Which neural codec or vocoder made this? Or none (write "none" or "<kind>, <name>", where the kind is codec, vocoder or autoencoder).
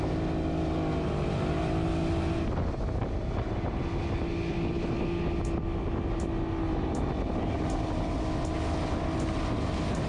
none